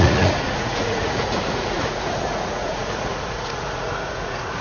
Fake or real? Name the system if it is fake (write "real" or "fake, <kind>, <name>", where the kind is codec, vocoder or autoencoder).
fake, vocoder, Vocos